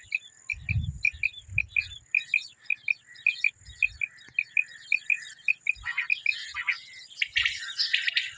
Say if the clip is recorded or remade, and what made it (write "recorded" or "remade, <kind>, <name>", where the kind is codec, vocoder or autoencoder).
recorded